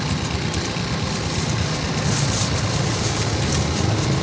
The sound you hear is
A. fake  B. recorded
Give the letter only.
B